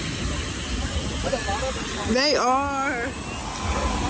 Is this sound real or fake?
real